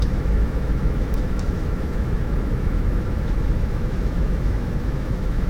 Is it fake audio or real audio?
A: fake